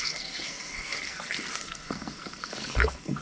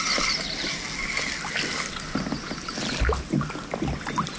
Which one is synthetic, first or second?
first